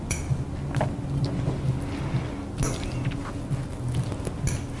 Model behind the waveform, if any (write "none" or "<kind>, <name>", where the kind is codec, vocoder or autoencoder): none